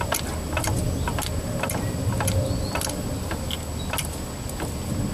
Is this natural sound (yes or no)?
yes